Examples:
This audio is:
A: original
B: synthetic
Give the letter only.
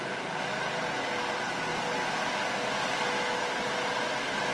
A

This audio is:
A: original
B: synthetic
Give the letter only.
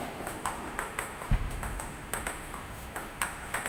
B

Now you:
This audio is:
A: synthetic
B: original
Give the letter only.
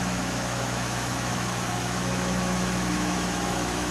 A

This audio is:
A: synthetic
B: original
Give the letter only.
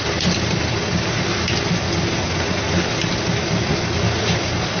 B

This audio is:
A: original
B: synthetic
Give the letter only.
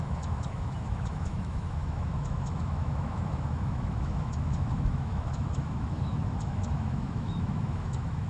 B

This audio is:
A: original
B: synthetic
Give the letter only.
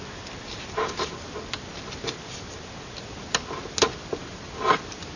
A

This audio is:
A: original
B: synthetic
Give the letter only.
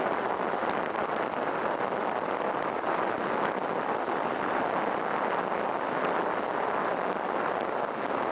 A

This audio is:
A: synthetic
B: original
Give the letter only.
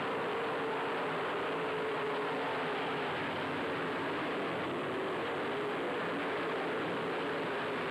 B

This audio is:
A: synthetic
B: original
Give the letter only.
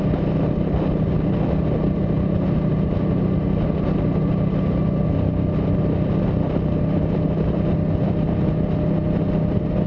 B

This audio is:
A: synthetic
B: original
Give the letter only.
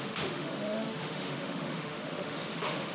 A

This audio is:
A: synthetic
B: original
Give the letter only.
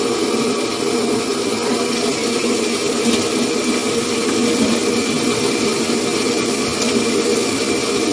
B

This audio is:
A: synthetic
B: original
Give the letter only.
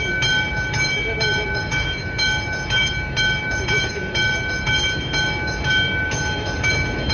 A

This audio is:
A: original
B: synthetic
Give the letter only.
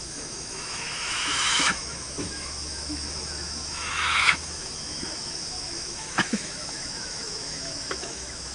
B